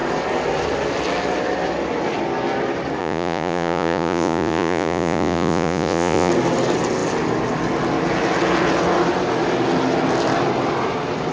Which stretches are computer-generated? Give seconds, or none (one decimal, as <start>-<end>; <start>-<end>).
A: 3.0-6.3